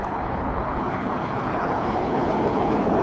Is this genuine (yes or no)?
no